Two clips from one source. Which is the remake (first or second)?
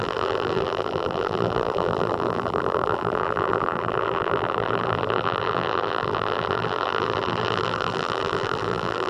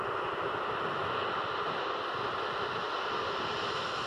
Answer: first